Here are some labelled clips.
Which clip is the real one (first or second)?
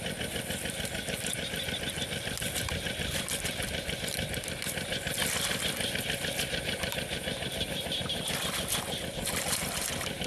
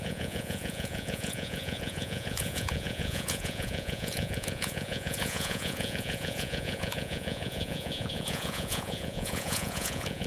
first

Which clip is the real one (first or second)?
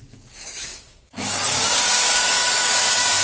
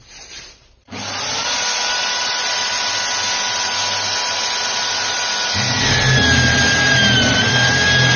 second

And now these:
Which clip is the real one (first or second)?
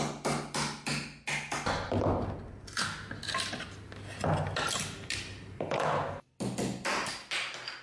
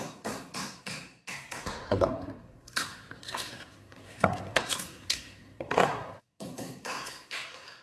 first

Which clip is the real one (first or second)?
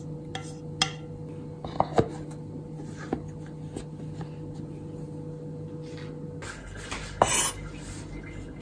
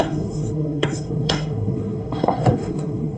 first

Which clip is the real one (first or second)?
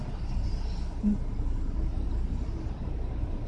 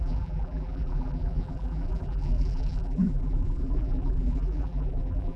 first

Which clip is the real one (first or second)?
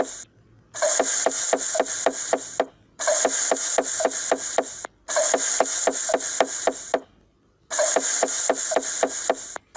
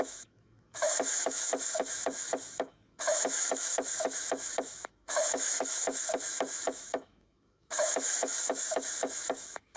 first